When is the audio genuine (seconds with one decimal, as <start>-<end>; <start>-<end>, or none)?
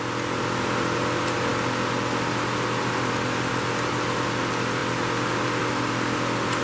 0.0-6.6